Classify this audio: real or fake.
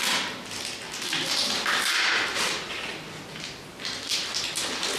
real